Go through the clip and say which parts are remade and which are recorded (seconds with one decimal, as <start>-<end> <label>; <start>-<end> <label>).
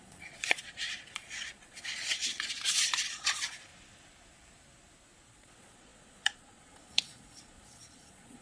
0.0-3.7 remade; 3.7-5.3 recorded; 5.3-8.4 remade